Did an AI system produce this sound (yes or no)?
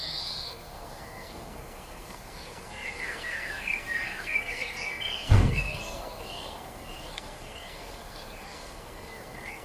yes